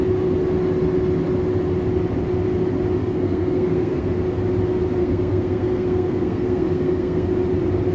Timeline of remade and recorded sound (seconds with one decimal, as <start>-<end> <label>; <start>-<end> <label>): 0.0-3.0 recorded; 3.0-4.1 remade; 4.1-5.0 recorded; 5.0-7.3 remade; 7.3-7.9 recorded